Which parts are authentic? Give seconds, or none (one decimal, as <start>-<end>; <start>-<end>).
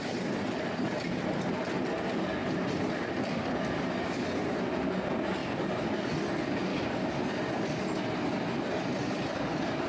0.0-9.9